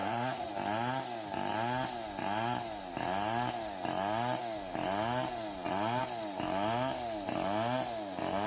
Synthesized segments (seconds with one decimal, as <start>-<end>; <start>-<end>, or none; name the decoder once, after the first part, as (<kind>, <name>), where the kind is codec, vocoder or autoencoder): 0.0-0.5 (vocoder, Vocos)

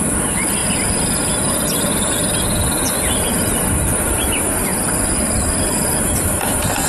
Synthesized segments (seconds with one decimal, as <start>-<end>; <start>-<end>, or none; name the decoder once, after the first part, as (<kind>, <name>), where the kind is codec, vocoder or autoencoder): none